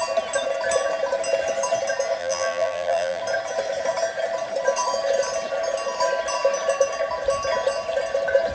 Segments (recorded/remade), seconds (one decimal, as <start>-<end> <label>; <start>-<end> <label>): 0.0-2.2 recorded; 2.2-3.2 remade; 3.2-8.5 recorded